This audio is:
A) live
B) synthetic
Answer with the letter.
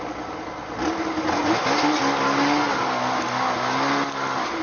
A